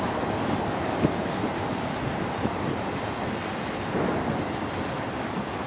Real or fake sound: real